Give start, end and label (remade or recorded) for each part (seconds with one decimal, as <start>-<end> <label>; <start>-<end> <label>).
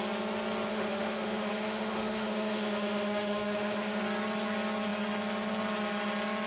0.0-0.7 recorded; 0.7-4.0 remade; 4.0-6.5 recorded